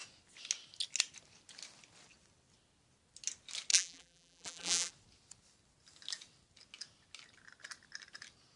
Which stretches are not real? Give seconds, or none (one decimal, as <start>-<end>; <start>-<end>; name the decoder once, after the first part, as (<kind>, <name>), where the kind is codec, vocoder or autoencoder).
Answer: 3.7-4.9 (vocoder, BigVGAN v2)